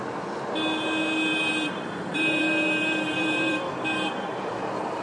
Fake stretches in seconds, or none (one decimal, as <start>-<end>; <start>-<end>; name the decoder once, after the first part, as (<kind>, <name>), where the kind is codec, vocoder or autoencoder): 1.3-3.6 (vocoder, BigVGAN v2)